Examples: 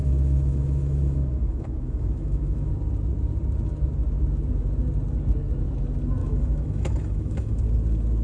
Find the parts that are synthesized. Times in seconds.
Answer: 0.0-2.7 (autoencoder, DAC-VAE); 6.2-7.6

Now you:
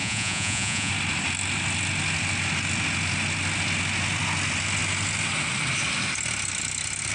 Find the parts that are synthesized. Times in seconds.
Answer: 0.0-0.9 (vocoder, Vocos)